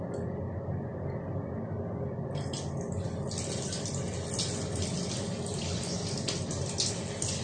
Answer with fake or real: real